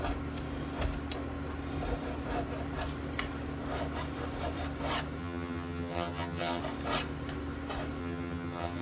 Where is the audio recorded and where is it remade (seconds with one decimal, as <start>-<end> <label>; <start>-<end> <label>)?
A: 0.0-5.2 recorded; 5.2-6.6 remade; 6.6-8.0 recorded; 8.0-8.8 remade